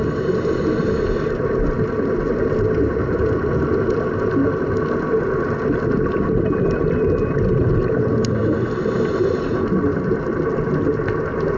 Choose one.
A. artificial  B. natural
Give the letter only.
B